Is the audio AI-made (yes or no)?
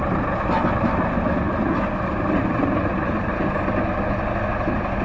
no